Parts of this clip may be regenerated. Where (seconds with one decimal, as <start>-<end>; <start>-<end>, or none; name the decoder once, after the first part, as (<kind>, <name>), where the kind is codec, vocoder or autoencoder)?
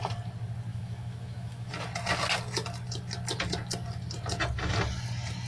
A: 0.7-1.7 (autoencoder, DAC-VAE)